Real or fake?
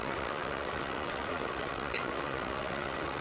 fake